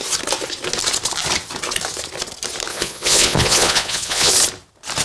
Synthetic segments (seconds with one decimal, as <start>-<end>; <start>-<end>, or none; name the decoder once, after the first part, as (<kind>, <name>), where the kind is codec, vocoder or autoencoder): 2.7-4.3 (vocoder, Vocos)